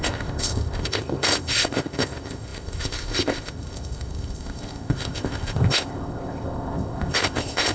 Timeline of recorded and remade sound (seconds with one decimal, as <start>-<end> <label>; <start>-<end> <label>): 0.0-7.7 remade